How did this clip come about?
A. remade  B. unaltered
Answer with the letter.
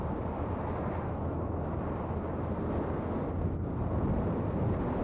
B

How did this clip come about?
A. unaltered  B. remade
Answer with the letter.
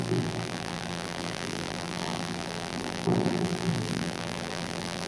B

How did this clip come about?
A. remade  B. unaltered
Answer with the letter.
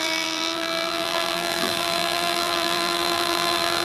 A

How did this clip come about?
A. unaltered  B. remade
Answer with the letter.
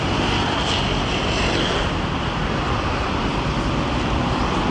B